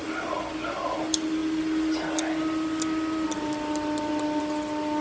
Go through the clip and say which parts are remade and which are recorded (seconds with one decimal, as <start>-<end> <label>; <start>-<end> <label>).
0.0-5.0 recorded